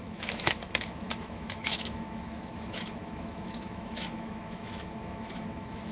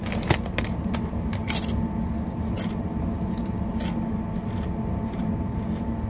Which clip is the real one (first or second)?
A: second